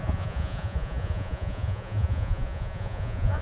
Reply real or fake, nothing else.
fake